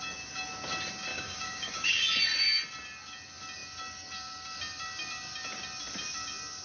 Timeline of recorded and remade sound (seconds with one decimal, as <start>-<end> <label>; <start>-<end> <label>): 0.0-1.1 recorded; 1.1-2.1 remade; 2.1-6.6 recorded